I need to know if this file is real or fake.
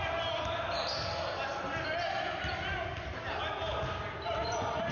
real